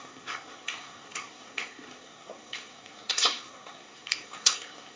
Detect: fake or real fake